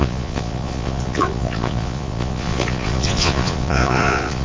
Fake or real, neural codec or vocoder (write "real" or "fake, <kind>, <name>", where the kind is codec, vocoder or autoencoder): fake, vocoder, Vocos